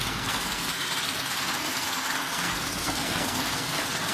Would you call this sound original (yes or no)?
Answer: no